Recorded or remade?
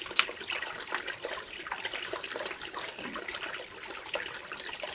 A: recorded